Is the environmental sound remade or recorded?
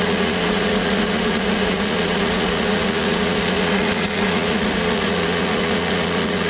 remade